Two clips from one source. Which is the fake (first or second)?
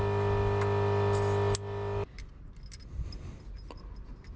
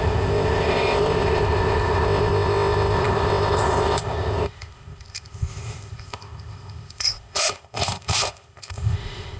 second